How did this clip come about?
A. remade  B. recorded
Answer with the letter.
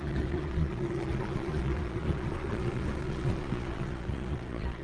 A